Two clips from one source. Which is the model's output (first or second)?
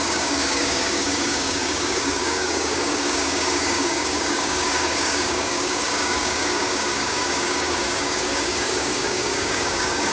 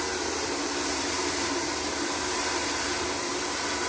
first